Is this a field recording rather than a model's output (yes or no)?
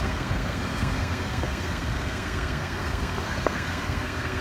no